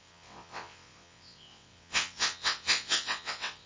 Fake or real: fake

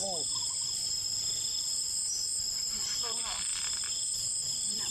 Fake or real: fake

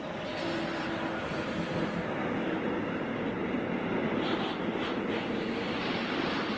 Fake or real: real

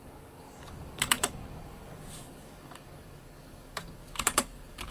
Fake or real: fake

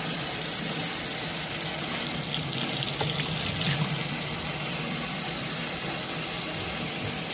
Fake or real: real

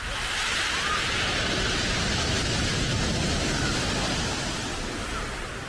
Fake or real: real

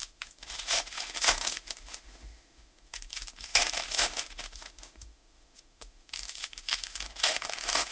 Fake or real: fake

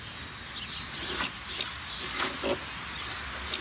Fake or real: real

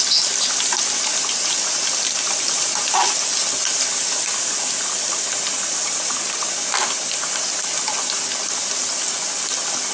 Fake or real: real